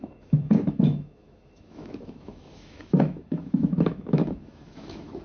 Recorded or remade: remade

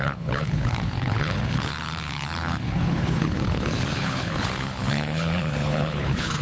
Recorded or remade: remade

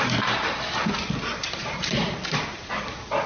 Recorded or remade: recorded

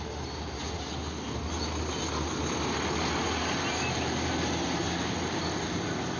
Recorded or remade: recorded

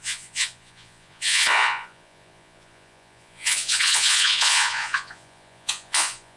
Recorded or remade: remade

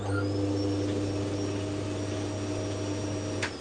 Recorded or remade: recorded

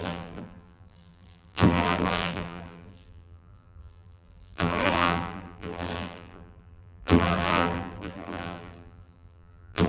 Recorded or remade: remade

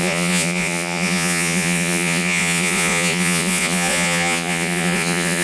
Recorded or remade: remade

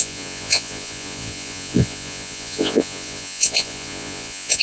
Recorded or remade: remade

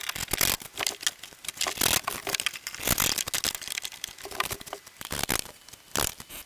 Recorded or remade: recorded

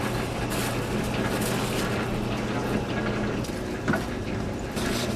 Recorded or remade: recorded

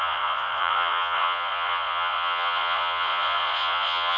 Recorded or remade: remade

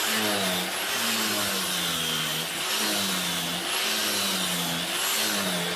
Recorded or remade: recorded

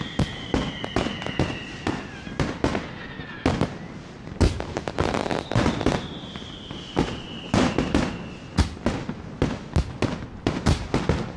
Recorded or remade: recorded